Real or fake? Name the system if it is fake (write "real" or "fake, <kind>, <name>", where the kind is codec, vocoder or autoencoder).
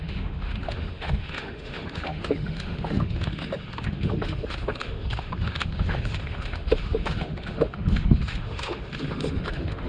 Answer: fake, autoencoder, DAC-VAE